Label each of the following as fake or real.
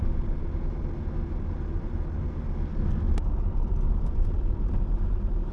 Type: real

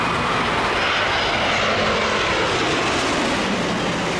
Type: real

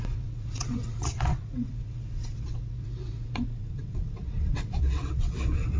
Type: fake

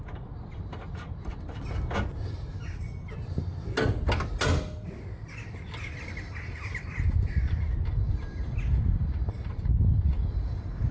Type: real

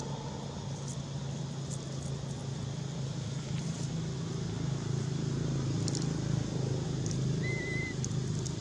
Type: real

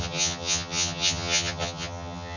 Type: fake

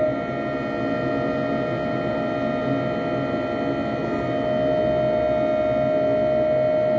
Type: real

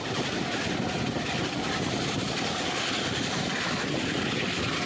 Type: real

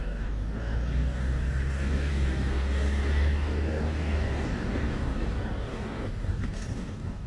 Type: fake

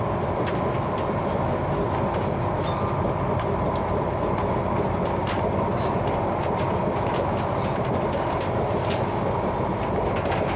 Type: real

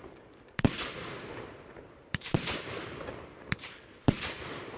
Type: fake